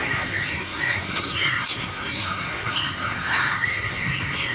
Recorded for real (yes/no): no